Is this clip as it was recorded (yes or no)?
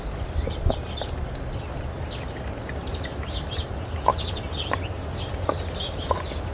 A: yes